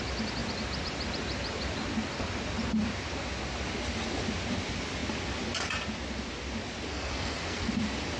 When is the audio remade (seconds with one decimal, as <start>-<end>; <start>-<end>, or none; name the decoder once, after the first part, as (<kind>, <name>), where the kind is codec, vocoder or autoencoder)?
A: 6.9-7.7 (codec, SNAC)